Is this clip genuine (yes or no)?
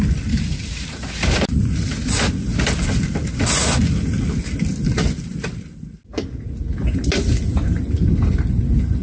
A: yes